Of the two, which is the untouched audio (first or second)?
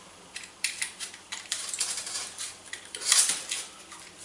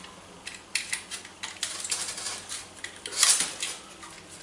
second